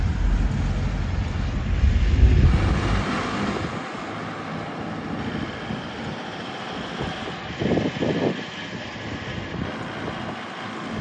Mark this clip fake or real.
real